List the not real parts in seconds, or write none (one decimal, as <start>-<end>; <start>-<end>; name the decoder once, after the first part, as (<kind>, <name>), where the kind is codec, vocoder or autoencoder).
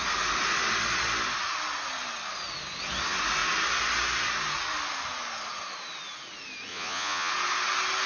6.7-7.3 (vocoder, Vocos)